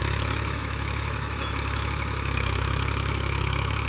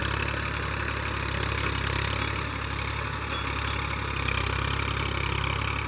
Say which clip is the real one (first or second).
second